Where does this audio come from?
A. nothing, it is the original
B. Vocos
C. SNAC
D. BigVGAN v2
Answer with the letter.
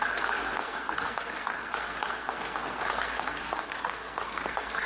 C